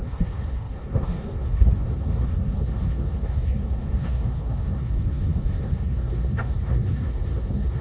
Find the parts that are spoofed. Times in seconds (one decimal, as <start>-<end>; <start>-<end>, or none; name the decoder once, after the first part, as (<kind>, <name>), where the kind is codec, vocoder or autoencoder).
0.0-7.8 (codec, SNAC)